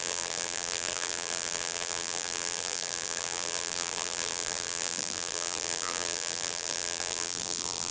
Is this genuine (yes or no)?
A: no